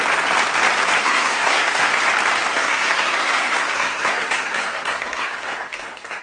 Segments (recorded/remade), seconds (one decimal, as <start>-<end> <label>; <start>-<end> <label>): 0.0-1.0 recorded; 1.0-2.0 remade; 2.0-2.5 recorded; 2.5-6.2 remade